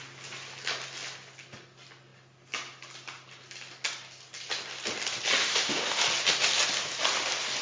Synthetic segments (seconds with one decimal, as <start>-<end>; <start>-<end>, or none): 5.4-6.0